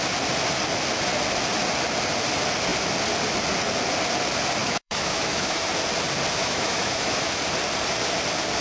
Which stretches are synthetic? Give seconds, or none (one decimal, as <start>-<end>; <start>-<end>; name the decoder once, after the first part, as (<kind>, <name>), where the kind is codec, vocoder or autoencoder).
4.6-5.7 (autoencoder, DAC-VAE); 6.4-7.4